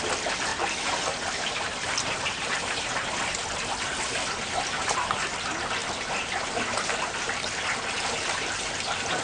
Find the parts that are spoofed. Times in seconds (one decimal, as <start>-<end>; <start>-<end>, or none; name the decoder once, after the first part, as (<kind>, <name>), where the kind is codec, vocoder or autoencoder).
0.5-3.3 (vocoder, BigVGAN v2); 5.8-9.2